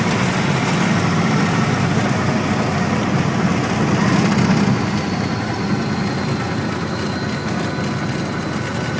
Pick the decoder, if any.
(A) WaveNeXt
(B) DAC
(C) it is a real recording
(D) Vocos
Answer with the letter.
C